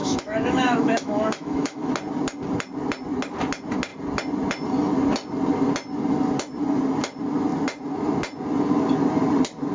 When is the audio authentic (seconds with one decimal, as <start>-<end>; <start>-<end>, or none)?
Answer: 1.9-9.7